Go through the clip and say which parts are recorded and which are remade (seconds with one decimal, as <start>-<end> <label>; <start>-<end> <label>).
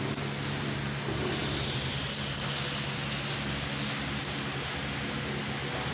0.0-5.9 recorded